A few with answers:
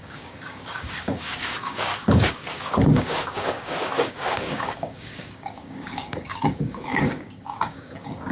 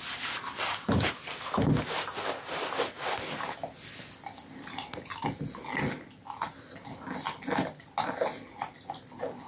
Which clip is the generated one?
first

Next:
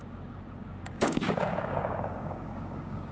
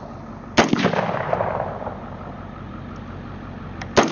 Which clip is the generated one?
first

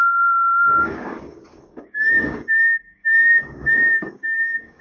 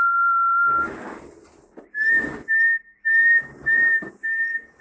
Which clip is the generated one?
first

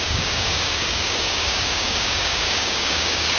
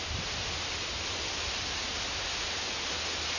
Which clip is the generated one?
first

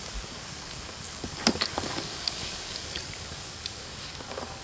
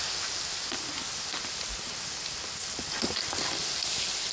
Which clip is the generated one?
first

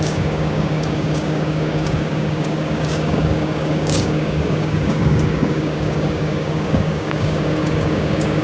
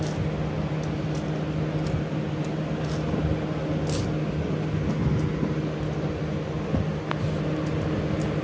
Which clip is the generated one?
first